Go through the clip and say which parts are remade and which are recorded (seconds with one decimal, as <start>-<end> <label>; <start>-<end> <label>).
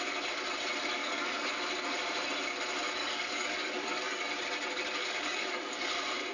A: 0.0-1.0 recorded; 1.0-1.5 remade; 1.5-3.0 recorded; 3.0-4.3 remade; 4.3-5.0 recorded; 5.0-5.7 remade; 5.7-6.3 recorded